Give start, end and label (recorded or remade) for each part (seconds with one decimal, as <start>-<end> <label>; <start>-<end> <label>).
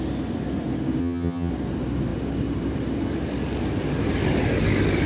0.0-1.0 recorded; 1.0-1.5 remade; 1.5-5.1 recorded